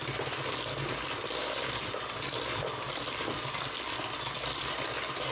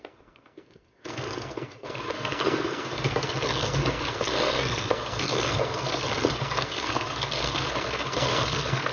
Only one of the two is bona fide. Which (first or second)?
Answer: first